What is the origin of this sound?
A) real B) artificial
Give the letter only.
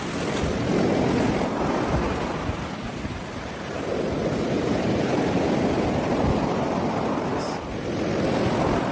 A